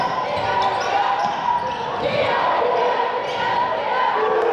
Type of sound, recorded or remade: recorded